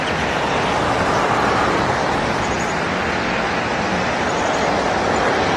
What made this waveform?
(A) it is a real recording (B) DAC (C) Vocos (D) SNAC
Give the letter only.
A